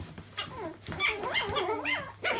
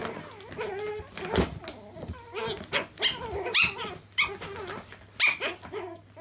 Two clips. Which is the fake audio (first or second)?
first